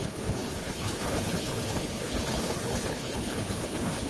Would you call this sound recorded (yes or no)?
no